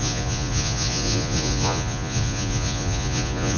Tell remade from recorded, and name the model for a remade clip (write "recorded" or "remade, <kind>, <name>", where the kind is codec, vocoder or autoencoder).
remade, vocoder, Vocos